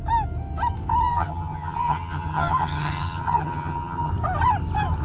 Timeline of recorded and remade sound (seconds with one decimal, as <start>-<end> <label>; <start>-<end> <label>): 0.0-1.1 recorded; 1.1-4.1 remade; 4.1-5.0 recorded